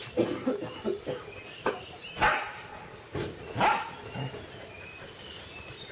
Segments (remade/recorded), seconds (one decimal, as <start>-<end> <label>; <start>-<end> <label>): 0.0-5.9 recorded